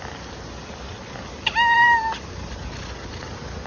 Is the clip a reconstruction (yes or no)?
no